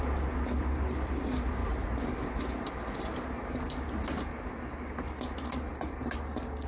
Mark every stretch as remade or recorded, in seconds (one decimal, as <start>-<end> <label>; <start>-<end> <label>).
0.0-1.6 recorded; 1.6-2.4 remade; 2.4-6.7 recorded